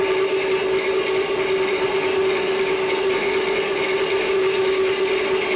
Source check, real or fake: real